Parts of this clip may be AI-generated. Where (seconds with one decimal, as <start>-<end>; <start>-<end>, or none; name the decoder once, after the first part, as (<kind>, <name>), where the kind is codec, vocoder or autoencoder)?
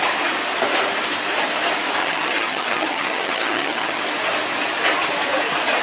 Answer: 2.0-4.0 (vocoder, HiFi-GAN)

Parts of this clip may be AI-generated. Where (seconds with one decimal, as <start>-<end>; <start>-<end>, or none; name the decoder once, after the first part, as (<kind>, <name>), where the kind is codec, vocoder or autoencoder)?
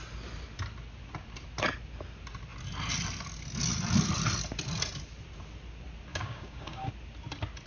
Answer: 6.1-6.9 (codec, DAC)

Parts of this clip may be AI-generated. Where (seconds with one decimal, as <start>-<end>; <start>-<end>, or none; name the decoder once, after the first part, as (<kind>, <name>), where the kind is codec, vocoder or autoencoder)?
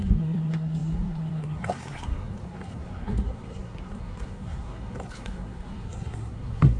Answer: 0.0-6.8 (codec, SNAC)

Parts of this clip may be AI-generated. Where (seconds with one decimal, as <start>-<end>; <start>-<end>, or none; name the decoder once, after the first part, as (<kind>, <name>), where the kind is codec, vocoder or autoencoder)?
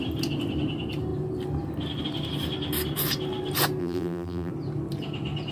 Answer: 3.8-4.5 (vocoder, BigVGAN v2)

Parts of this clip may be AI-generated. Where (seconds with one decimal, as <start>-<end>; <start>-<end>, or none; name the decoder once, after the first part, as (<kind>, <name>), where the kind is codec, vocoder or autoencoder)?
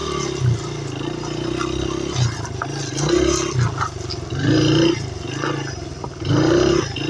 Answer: none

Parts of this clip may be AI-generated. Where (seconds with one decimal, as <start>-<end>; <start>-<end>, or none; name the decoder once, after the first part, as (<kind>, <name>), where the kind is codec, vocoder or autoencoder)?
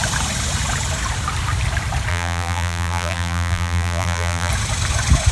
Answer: 2.1-4.5 (vocoder, BigVGAN v2)